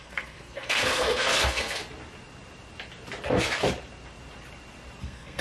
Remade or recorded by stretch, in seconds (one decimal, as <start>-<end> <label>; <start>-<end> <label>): 0.0-1.8 remade; 1.8-5.0 recorded; 5.0-5.4 remade